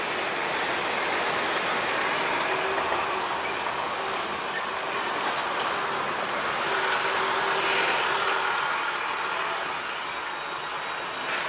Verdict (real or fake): real